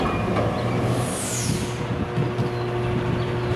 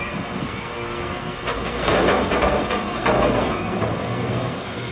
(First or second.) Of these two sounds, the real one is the first